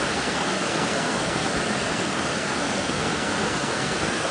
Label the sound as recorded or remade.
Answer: remade